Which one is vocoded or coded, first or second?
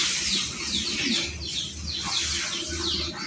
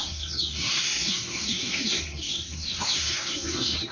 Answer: second